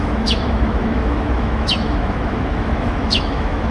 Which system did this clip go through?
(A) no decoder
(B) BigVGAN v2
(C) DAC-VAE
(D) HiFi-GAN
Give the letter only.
C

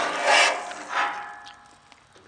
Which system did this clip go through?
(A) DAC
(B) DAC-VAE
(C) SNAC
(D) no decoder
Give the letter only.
D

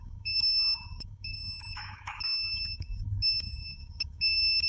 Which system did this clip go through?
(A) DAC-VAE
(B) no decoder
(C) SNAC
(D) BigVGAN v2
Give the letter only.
A